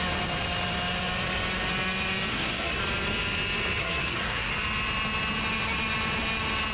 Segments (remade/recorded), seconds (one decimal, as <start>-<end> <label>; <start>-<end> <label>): 0.0-2.3 recorded; 2.3-2.8 remade; 2.8-3.8 recorded; 3.8-4.5 remade; 4.5-6.7 recorded